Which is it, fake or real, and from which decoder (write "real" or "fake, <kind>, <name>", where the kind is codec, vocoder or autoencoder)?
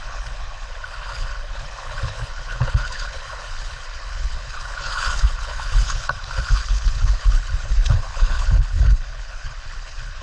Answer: fake, codec, HILCodec